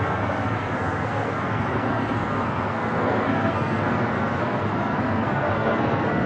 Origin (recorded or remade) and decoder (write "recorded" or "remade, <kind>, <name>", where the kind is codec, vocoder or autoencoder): remade, codec, SNAC